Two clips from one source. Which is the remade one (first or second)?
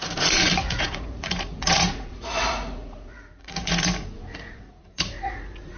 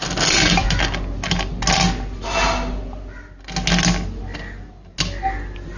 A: first